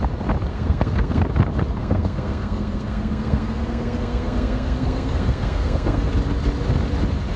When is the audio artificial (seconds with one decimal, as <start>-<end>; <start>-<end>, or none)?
0.5-1.2; 1.8-6.1